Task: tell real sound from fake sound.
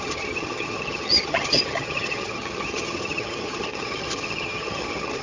fake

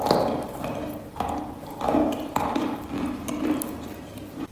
fake